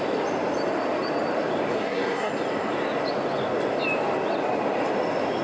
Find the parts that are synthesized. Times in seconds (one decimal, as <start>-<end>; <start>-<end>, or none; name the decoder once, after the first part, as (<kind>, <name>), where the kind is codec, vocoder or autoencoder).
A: 1.7-2.3 (codec, SNAC)